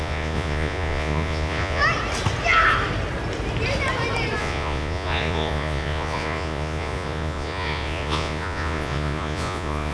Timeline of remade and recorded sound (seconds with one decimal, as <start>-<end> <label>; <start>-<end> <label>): 0.0-1.8 remade; 1.8-4.4 recorded; 4.4-9.9 remade